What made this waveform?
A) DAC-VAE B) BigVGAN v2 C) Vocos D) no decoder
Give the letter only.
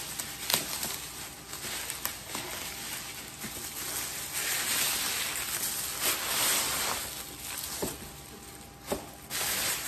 D